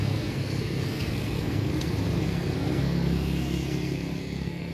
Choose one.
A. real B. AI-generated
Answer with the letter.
B